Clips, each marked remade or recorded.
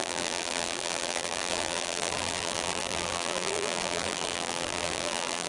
remade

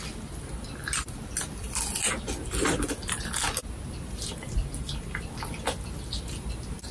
recorded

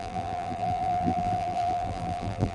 remade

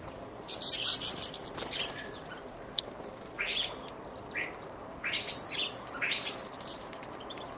remade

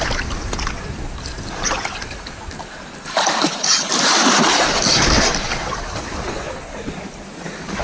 recorded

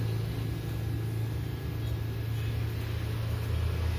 recorded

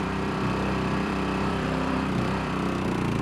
remade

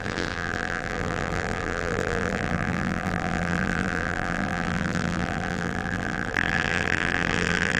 remade